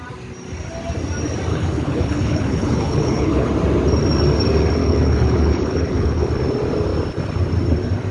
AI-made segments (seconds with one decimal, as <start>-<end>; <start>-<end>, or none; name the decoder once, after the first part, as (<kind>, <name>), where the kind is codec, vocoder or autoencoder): 1.5-3.5 (codec, HILCodec); 4.8-6.3